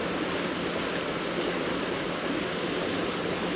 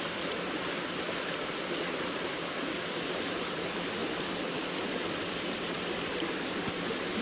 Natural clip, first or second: first